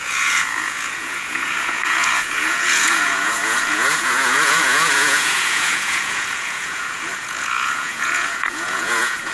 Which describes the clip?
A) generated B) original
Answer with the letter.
A